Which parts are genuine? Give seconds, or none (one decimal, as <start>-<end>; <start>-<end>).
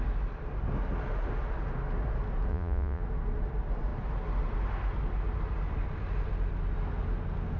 0.0-2.5; 3.0-7.6